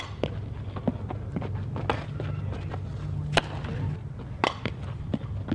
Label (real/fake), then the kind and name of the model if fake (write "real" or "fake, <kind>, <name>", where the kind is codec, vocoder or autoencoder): real